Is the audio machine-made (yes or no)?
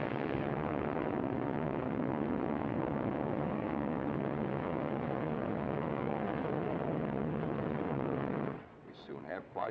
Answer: yes